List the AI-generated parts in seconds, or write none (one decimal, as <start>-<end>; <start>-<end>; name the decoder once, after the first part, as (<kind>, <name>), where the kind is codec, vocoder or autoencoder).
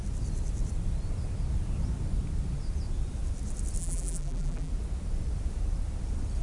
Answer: 3.8-4.7 (vocoder, BigVGAN v2)